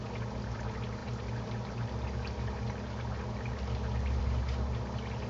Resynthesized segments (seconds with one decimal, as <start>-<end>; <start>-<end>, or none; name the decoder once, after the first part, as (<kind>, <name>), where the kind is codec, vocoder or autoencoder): none